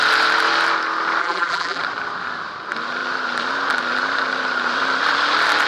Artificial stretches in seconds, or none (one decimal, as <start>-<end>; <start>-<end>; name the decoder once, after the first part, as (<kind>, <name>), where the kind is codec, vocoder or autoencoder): 1.2-1.8 (vocoder, BigVGAN v2)